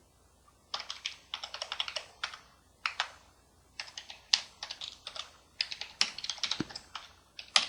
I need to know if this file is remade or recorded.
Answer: recorded